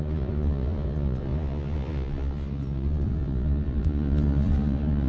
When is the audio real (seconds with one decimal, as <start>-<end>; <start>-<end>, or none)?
none